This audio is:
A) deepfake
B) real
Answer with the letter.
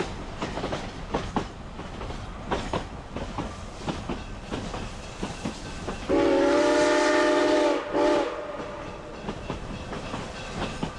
B